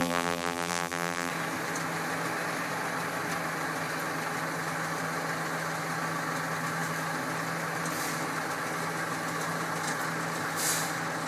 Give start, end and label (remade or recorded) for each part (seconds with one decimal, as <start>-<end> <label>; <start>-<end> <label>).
0.0-1.3 remade; 1.3-11.3 recorded